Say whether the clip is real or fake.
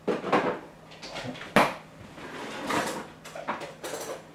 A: real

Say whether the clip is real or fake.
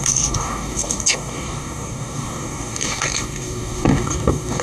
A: fake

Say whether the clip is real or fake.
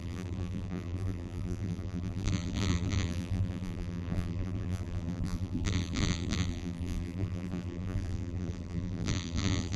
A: fake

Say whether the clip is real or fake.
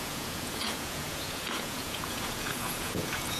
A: fake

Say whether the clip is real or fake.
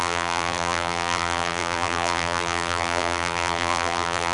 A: fake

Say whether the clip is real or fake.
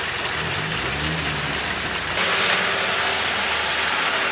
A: real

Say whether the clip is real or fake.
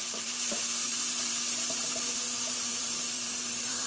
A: fake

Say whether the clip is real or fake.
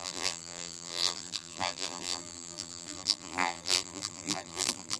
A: fake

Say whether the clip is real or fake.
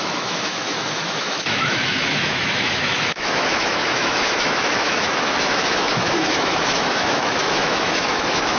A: fake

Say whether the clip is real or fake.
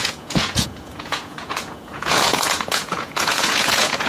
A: fake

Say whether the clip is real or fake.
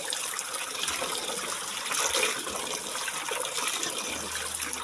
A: real